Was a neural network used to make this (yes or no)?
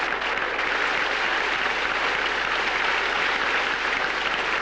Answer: no